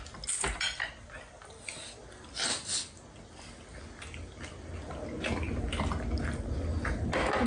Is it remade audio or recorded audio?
recorded